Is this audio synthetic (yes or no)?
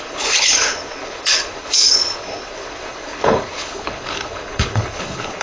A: yes